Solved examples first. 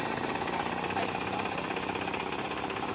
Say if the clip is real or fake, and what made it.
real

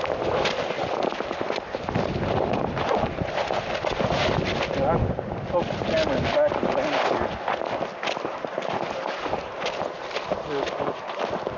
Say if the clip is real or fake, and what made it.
real